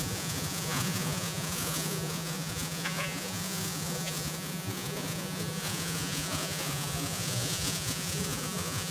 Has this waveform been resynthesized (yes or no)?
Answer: yes